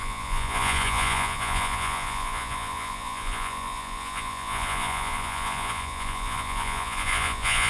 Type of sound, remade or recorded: remade